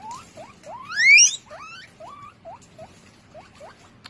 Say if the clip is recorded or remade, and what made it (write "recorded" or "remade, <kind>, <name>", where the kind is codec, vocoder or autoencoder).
recorded